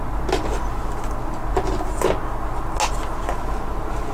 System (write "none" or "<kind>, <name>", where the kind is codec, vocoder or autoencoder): none